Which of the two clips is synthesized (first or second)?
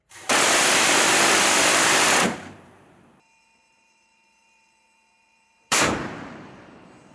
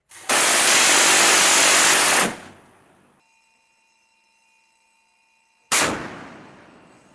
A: first